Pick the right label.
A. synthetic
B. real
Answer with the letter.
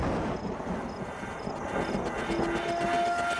B